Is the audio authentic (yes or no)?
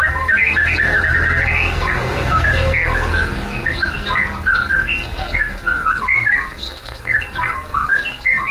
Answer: no